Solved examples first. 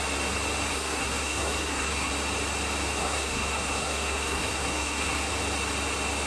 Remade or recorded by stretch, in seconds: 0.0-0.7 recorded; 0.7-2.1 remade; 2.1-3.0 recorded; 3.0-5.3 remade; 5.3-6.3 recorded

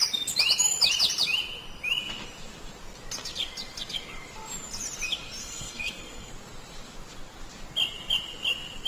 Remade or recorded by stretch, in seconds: 0.0-5.4 recorded; 5.4-6.3 remade; 6.3-8.9 recorded

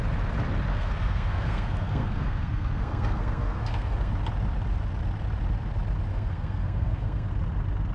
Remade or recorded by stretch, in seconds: 0.0-0.7 recorded; 0.7-4.1 remade; 4.1-6.1 recorded; 6.1-7.3 remade; 7.3-7.9 recorded

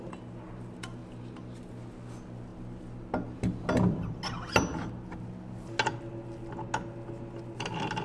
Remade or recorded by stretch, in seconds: 0.0-8.0 recorded